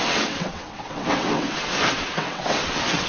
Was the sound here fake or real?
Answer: fake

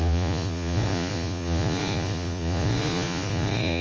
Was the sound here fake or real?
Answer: fake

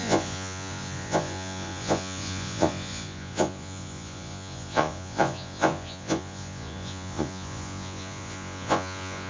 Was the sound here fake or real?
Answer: fake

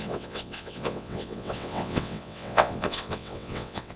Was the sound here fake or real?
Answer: fake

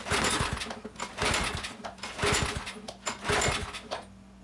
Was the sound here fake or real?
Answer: real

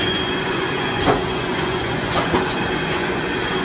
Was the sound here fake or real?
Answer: fake